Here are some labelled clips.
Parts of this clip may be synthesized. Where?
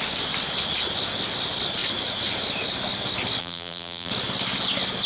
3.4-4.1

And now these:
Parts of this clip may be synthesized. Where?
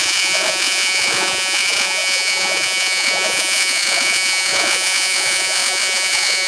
0.0-6.5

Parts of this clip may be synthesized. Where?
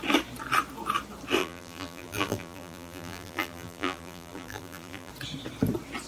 1.4-5.1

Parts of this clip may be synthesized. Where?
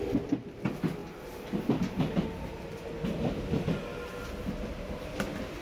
none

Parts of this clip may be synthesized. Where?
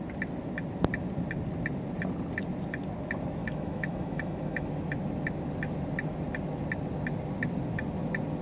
3.4-4.7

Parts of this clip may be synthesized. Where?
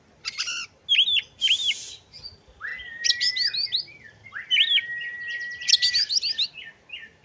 none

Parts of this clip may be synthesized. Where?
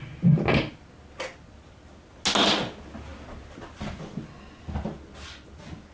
none